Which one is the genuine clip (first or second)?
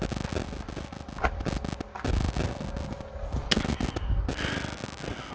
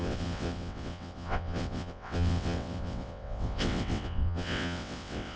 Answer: first